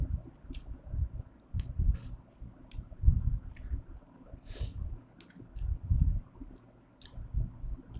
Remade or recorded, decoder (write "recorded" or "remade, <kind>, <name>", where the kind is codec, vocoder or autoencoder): recorded